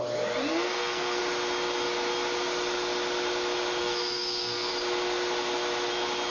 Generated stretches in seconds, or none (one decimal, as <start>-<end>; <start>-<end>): 0.5-1.2; 3.8-4.7